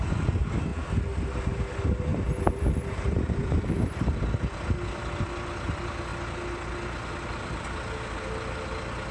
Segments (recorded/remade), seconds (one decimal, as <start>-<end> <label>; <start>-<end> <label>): 0.0-2.1 recorded; 2.1-4.2 remade; 4.2-9.1 recorded